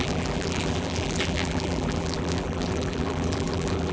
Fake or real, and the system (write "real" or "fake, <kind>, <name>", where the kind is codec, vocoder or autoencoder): fake, vocoder, BigVGAN v2